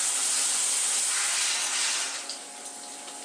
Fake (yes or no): no